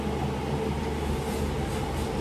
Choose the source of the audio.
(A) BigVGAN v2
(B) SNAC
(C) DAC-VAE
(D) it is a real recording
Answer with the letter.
D